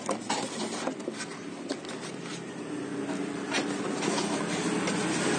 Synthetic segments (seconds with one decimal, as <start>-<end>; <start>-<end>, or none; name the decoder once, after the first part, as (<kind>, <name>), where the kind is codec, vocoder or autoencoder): none